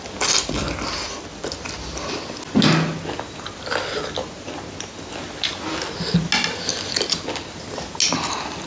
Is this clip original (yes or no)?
yes